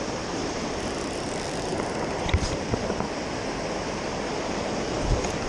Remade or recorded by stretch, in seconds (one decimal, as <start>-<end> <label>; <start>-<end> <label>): 0.0-5.5 remade

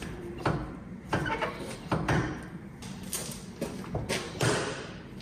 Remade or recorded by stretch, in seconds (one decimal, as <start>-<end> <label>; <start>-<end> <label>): 0.0-3.2 remade; 3.2-4.1 recorded; 4.1-5.2 remade

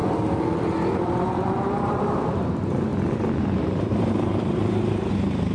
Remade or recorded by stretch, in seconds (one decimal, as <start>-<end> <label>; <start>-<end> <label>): 0.0-0.9 recorded; 0.9-2.9 remade; 2.9-3.4 recorded; 3.4-5.5 remade

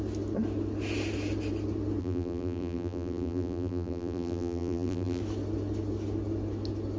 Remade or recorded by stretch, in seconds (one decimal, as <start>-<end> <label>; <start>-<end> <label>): 0.0-2.0 recorded; 2.0-5.2 remade; 5.2-7.0 recorded

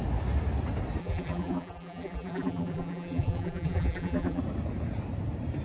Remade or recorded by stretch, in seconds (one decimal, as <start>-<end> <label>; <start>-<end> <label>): 0.0-1.0 recorded; 1.0-4.4 remade; 4.4-5.6 recorded